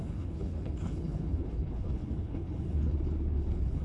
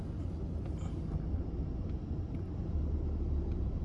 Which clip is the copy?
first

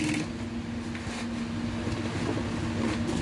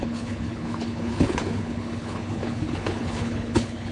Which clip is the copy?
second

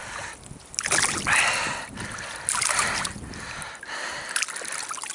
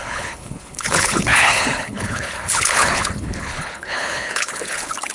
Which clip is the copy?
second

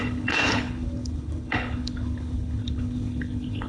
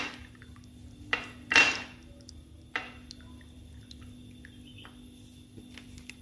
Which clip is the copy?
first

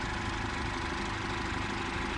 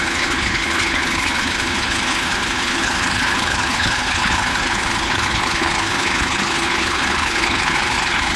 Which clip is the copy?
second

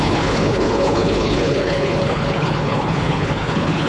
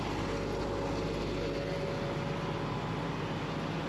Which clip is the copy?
first